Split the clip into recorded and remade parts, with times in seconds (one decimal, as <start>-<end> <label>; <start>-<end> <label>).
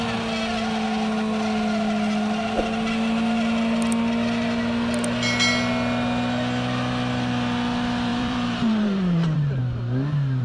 0.0-8.1 recorded; 8.1-9.6 remade; 9.6-10.4 recorded